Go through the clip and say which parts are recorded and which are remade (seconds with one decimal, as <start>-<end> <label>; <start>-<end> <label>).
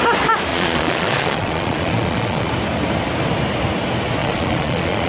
0.0-0.5 recorded; 0.5-2.5 remade; 2.5-4.2 recorded; 4.2-5.1 remade